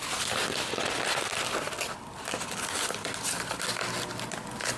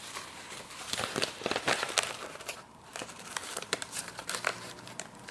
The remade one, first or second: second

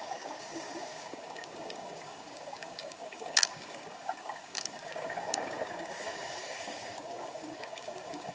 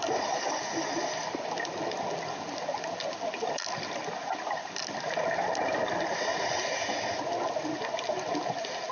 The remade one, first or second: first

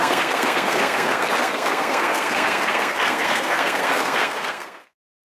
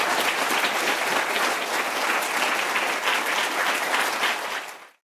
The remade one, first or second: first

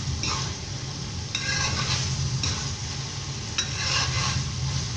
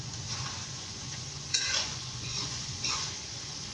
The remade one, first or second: second